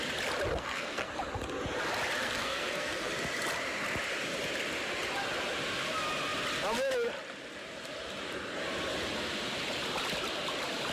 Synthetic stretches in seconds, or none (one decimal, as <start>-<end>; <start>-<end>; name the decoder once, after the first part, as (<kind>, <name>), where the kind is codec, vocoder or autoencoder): 0.5-1.1 (codec, SNAC); 2.2-3.1